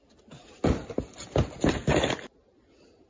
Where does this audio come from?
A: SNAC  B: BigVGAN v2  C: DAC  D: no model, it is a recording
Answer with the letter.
D